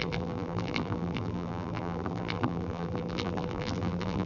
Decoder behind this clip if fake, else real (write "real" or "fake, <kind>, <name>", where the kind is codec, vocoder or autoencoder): fake, vocoder, BigVGAN v2